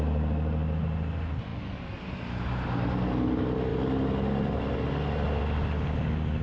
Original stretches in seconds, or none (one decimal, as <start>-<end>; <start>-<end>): 0.0-6.4